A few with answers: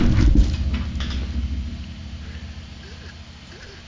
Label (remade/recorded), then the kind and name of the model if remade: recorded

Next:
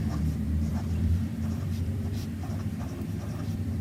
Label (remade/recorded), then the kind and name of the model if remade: remade, vocoder, BigVGAN v2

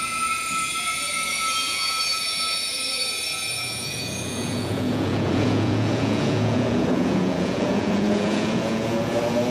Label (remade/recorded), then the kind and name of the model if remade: remade, vocoder, Vocos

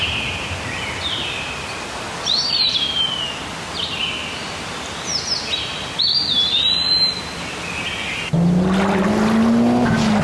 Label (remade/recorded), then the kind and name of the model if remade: recorded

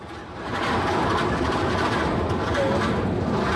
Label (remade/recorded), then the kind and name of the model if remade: recorded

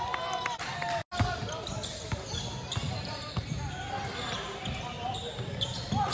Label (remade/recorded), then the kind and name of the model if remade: recorded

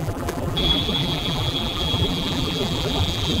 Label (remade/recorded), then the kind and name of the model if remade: remade, vocoder, BigVGAN v2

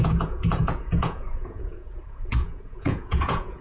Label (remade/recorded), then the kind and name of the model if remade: remade, vocoder, Vocos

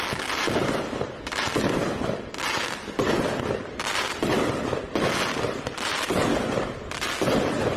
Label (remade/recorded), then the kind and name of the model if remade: recorded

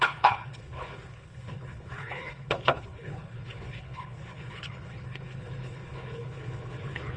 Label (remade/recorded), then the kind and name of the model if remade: remade, codec, HILCodec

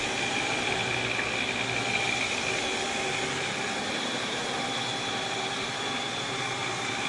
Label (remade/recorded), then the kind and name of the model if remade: recorded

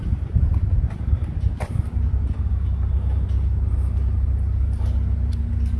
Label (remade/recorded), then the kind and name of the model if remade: recorded